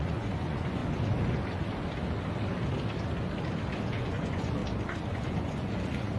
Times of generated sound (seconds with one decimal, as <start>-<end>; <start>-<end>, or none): 0.0-0.8; 3.9-4.6; 5.1-6.2